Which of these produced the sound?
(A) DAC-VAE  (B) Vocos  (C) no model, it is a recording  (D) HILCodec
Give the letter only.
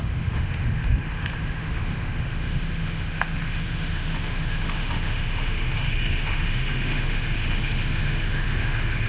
A